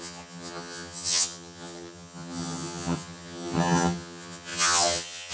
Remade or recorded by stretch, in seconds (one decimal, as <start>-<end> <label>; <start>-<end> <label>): 0.0-5.3 remade